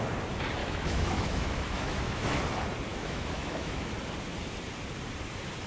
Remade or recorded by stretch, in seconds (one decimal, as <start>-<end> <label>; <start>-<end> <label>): 0.0-0.6 recorded; 0.6-2.4 remade; 2.4-2.9 recorded; 2.9-3.9 remade; 3.9-5.7 recorded